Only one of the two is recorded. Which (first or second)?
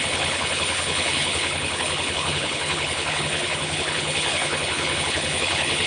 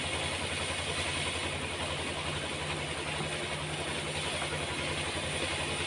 second